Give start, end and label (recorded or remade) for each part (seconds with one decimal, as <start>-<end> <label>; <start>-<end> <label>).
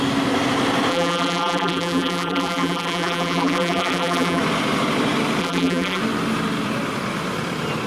0.0-0.9 recorded; 0.9-4.4 remade; 4.4-5.4 recorded; 5.4-6.0 remade; 6.0-7.9 recorded